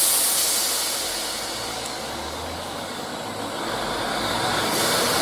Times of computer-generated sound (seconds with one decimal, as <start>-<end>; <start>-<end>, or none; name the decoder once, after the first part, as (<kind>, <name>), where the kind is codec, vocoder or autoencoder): 1.7-3.1 (codec, DAC); 4.1-4.8